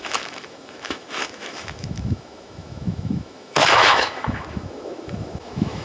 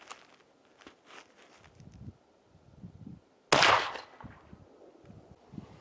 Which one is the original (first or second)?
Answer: second